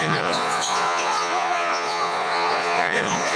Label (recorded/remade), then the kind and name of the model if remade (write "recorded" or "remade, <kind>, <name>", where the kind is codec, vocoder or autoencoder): remade, vocoder, Vocos